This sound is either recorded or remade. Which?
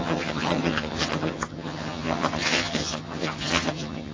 remade